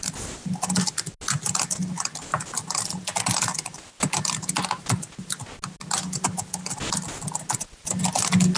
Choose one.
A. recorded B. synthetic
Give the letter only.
A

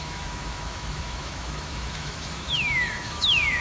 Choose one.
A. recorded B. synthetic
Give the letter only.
B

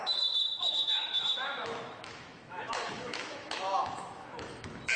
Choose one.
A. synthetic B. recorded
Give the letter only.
A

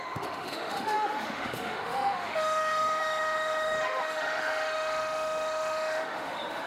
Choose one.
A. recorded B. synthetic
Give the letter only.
B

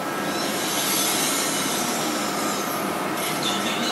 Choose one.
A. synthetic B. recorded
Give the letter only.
B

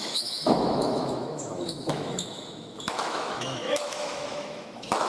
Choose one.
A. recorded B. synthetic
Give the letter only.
B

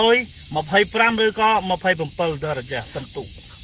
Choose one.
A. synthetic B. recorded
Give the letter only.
A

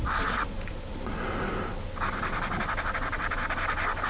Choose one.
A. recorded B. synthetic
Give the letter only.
A